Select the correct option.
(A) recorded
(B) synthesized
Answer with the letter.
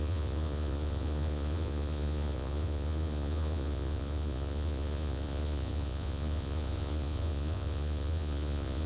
B